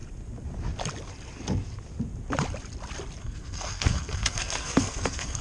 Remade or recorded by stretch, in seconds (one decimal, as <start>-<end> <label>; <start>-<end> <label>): 0.0-3.2 recorded; 3.2-5.4 remade